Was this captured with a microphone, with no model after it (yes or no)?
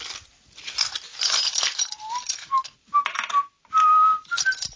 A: yes